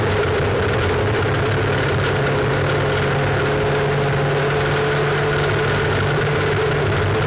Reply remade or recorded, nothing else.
recorded